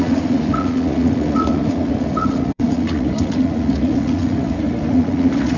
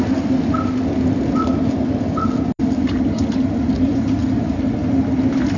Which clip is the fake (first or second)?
first